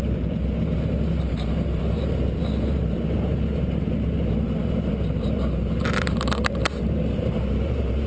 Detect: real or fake fake